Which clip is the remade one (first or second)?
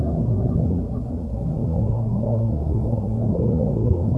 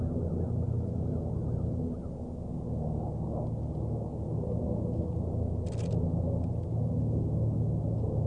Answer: first